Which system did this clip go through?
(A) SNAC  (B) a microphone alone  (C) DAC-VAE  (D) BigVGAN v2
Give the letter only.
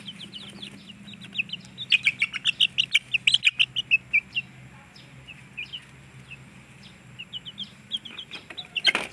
B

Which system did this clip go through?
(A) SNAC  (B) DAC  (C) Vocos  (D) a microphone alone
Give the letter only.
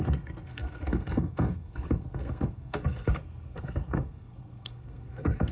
A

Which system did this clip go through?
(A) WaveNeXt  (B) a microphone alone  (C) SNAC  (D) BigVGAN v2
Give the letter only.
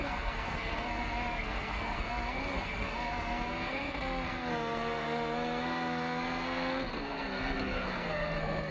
C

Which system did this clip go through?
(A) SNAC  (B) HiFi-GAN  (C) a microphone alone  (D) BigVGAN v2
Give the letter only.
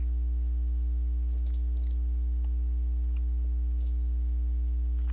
C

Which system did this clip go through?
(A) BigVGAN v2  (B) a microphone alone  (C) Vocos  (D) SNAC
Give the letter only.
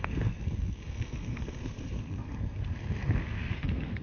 D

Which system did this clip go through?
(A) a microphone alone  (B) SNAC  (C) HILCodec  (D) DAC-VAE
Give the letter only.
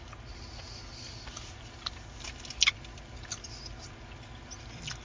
A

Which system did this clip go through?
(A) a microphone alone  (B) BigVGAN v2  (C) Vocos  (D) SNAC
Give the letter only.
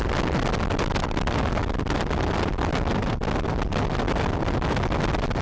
A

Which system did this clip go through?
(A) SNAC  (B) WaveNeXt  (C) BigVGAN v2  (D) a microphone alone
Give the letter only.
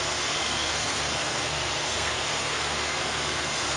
A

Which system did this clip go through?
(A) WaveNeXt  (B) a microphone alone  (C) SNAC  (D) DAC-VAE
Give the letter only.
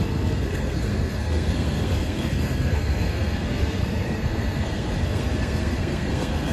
C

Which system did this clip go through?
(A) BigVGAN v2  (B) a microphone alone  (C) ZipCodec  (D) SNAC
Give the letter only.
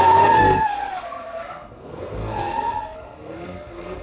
D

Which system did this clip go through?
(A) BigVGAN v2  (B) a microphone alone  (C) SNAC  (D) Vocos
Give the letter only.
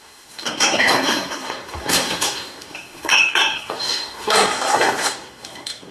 C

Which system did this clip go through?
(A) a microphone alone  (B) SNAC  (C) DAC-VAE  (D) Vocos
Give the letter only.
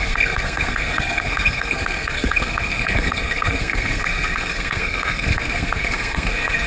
B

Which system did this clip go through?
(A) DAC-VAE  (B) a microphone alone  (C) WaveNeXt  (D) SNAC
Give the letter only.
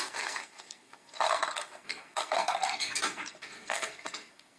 D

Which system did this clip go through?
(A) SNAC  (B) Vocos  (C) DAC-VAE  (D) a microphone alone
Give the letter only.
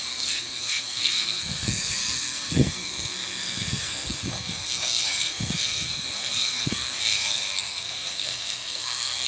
A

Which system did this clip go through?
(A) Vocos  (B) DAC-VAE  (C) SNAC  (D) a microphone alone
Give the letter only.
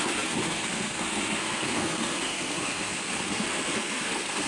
C